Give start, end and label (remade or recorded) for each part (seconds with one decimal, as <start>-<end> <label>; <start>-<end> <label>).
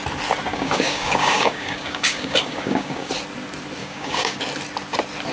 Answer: 0.0-0.5 recorded; 0.5-3.1 remade; 3.1-3.8 recorded; 3.8-4.4 remade; 4.4-5.3 recorded